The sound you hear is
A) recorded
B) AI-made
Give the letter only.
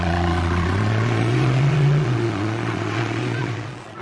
B